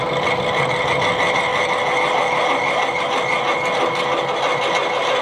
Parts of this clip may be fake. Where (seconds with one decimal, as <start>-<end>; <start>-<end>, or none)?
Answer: none